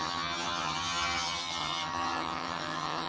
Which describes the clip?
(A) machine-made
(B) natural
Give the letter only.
A